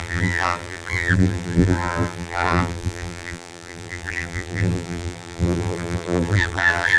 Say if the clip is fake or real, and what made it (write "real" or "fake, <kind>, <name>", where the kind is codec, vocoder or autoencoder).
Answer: fake, vocoder, BigVGAN v2